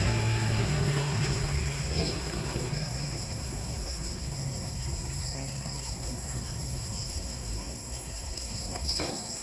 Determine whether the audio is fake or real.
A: fake